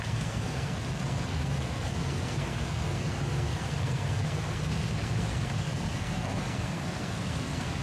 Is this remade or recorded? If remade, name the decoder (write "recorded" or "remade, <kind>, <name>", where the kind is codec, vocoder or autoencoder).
remade, codec, SNAC